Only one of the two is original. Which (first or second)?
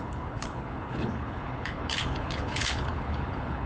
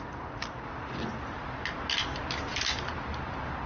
second